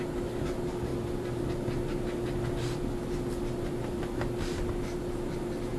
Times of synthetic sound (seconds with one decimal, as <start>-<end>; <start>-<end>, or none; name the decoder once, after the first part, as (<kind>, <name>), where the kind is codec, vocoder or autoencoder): none